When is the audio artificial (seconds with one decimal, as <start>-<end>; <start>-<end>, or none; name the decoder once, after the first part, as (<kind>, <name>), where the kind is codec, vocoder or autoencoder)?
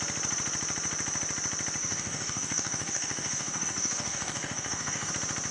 1.8-5.1 (codec, DAC)